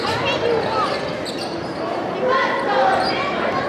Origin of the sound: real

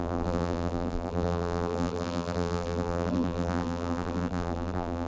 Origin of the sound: fake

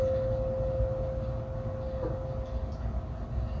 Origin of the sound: real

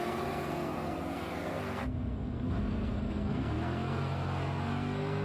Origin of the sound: fake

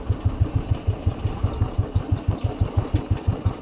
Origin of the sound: real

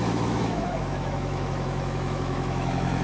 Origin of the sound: fake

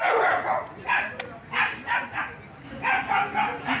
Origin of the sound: real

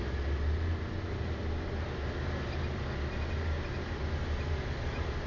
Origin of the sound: real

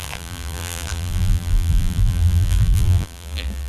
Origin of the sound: fake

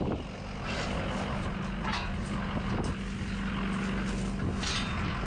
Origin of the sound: real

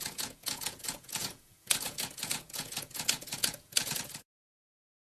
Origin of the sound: fake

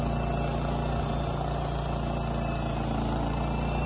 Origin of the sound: real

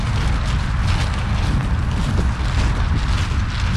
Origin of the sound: real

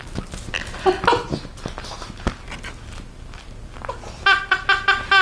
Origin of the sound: real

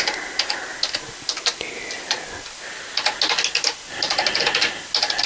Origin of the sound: real